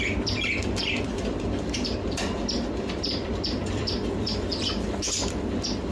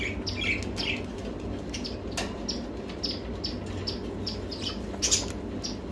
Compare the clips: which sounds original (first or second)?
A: second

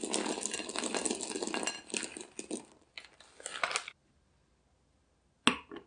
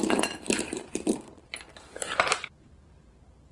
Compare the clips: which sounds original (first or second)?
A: first